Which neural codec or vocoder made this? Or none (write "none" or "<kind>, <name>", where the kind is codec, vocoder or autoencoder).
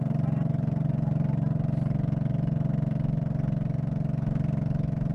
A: vocoder, BigVGAN v2